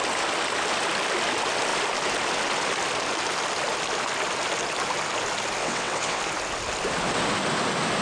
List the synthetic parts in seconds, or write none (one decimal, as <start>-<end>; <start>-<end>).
5.6-6.2